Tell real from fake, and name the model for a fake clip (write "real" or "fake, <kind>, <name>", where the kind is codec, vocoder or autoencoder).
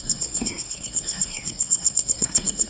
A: fake, codec, SNAC